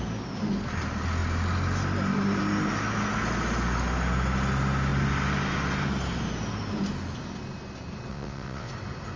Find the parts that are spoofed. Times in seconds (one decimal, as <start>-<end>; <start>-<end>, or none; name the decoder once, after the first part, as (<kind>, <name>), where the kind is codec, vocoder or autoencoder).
8.1-8.7 (vocoder, WaveNeXt)